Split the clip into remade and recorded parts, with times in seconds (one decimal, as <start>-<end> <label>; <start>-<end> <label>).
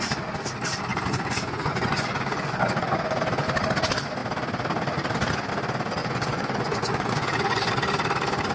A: 0.0-0.9 recorded; 0.9-3.2 remade; 3.2-6.0 recorded; 6.0-7.7 remade; 7.7-8.5 recorded